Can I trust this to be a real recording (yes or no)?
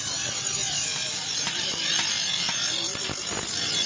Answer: yes